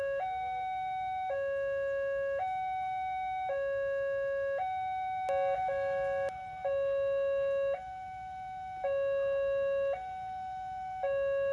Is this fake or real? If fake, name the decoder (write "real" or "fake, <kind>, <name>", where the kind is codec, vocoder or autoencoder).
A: real